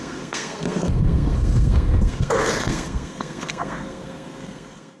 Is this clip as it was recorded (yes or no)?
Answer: no